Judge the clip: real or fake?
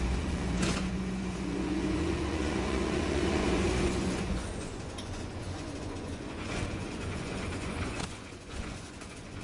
fake